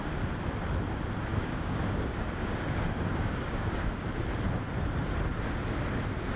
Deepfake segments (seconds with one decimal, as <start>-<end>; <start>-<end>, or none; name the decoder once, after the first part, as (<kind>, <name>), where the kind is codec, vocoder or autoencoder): 1.3-4.1 (codec, DAC)